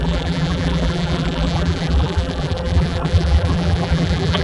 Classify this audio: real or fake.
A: fake